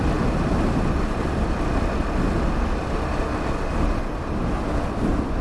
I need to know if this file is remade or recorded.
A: recorded